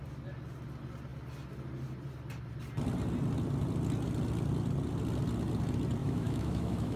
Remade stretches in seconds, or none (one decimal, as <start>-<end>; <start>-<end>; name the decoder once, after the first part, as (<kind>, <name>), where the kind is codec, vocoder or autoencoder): 6.0-7.0 (autoencoder, DAC-VAE)